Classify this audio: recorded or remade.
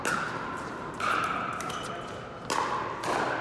recorded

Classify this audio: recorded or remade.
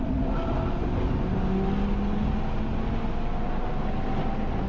recorded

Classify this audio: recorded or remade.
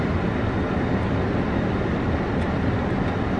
recorded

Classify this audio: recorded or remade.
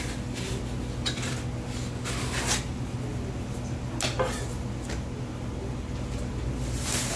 recorded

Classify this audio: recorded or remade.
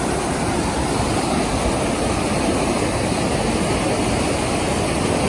recorded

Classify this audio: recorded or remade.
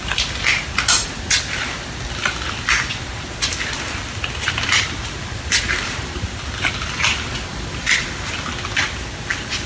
recorded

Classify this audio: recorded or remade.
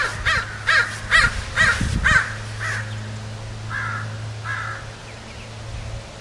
recorded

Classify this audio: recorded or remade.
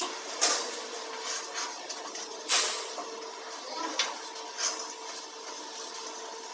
recorded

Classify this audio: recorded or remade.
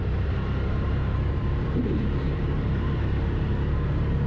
remade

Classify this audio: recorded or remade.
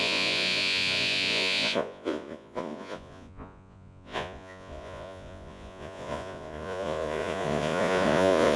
remade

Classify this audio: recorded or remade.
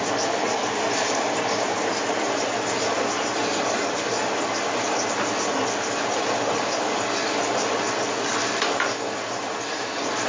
recorded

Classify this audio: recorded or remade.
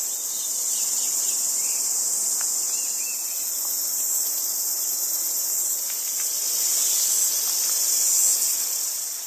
recorded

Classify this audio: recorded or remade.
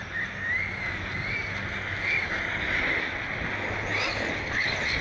recorded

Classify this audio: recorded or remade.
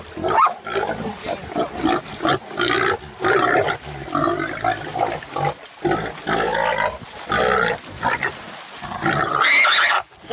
recorded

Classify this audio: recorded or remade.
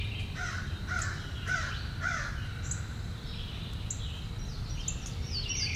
recorded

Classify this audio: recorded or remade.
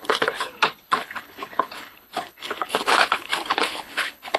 remade